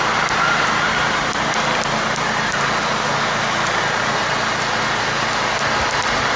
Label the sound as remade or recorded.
recorded